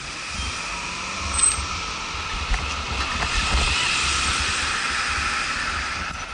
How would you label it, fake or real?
real